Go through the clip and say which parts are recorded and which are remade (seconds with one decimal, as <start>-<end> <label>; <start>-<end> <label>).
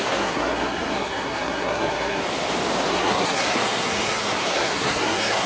0.0-2.2 remade; 2.2-2.9 recorded; 2.9-5.5 remade